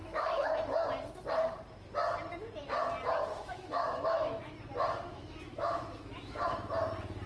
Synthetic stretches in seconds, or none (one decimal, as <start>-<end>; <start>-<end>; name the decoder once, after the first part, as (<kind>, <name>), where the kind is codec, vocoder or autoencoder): 0.0-0.7 (autoencoder, DAC-VAE); 3.3-4.4; 5.1-6.7